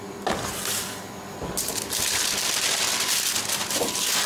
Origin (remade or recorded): remade